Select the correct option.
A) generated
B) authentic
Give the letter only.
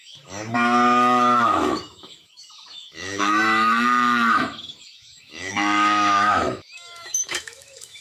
A